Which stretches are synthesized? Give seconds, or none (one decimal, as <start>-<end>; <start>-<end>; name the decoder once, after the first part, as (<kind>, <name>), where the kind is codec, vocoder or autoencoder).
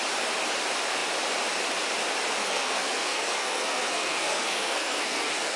2.4-5.6 (codec, SNAC)